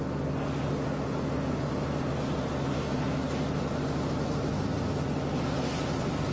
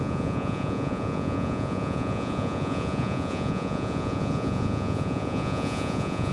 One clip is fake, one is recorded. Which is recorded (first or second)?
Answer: first